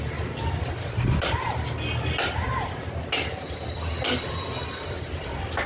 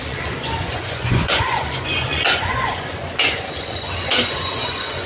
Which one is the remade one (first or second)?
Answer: second